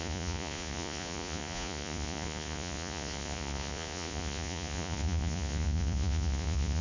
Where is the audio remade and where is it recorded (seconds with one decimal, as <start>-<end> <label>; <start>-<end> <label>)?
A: 0.0-6.8 remade